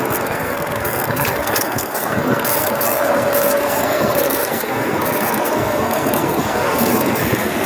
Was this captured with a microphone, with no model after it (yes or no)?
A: no